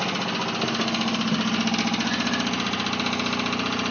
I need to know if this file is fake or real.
real